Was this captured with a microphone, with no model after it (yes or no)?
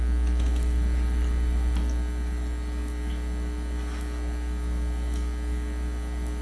yes